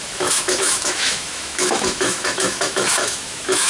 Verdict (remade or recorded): remade